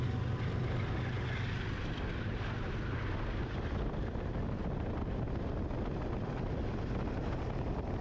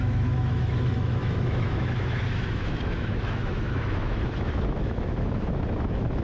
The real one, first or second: first